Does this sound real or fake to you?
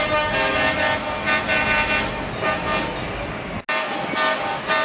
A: real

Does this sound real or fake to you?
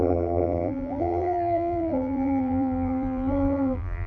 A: fake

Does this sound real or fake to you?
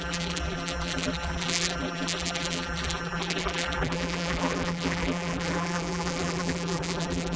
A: fake